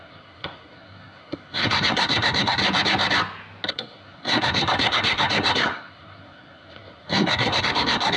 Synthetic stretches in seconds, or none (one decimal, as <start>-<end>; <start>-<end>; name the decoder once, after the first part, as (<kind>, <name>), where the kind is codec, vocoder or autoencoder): 0.0-2.6 (codec, SNAC); 3.7-8.2